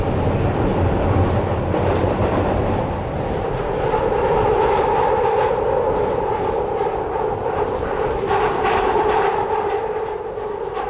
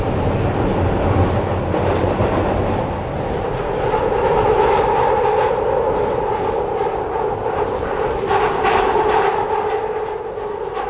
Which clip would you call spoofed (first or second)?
first